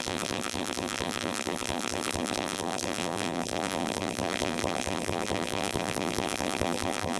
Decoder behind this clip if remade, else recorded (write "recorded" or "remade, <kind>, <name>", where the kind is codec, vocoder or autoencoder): remade, vocoder, BigVGAN v2